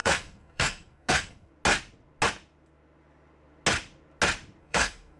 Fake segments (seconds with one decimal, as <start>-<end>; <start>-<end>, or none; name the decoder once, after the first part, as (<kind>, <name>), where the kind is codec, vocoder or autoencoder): 0.0-1.5 (codec, SNAC); 4.6-5.2